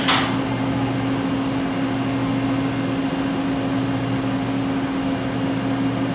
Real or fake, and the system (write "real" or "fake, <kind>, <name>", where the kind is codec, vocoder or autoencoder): real